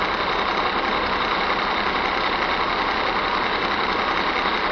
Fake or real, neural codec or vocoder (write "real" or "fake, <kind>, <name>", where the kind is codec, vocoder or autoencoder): real